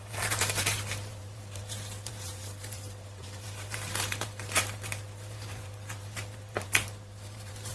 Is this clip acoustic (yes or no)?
no